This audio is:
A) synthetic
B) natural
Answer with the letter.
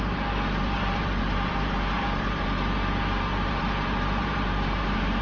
A